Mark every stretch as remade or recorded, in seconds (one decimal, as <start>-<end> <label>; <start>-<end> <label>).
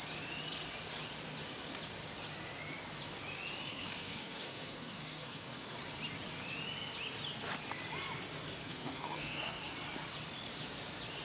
0.0-3.7 recorded; 3.7-5.7 remade; 5.7-8.6 recorded; 8.6-9.6 remade; 9.6-11.2 recorded